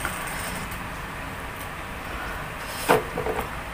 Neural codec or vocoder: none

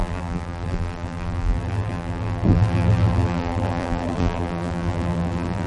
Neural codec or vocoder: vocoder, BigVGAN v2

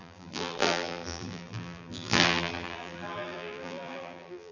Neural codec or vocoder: vocoder, BigVGAN v2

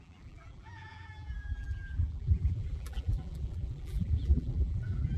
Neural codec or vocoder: vocoder, BigVGAN v2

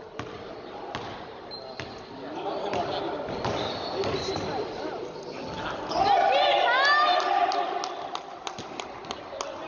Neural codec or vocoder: none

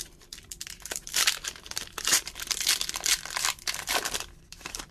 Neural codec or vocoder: vocoder, BigVGAN v2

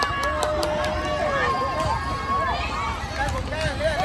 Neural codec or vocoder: none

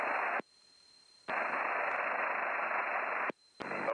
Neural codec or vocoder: none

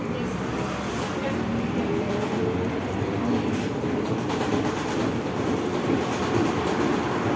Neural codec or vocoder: vocoder, BigVGAN v2